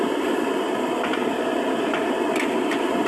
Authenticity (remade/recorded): remade